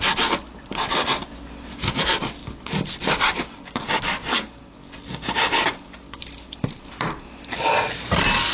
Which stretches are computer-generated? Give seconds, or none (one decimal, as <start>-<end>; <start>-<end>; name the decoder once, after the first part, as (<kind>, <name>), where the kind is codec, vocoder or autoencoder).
0.0-2.4 (vocoder, BigVGAN v2); 3.3-4.2; 6.2-8.5